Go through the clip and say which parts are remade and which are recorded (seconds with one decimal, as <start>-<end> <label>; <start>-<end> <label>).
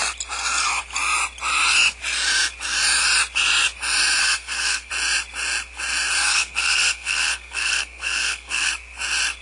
0.0-4.2 recorded; 4.2-4.9 remade; 4.9-6.2 recorded; 6.2-8.7 remade; 8.7-9.4 recorded